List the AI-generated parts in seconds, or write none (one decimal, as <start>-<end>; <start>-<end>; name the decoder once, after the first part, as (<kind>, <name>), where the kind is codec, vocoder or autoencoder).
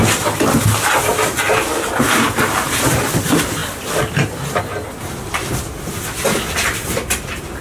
none